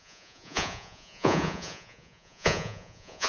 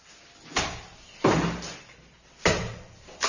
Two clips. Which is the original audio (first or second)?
second